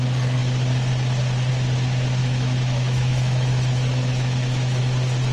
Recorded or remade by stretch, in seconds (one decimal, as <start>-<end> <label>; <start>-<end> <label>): 0.0-2.2 recorded; 2.2-4.8 remade; 4.8-5.3 recorded